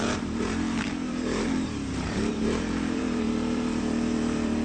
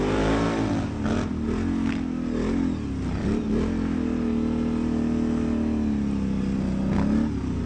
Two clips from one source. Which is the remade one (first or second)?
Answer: first